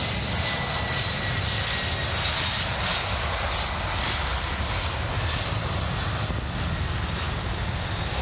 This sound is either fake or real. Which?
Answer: real